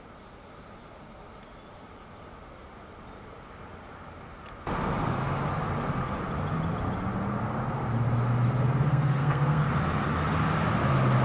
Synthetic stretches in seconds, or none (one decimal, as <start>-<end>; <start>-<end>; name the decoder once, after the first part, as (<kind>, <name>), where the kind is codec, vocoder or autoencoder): 8.9-9.7 (codec, SNAC)